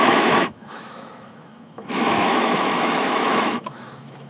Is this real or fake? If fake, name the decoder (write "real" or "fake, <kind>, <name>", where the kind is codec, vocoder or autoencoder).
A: fake, autoencoder, DAC-VAE